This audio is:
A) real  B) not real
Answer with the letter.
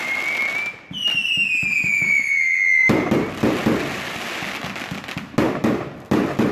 A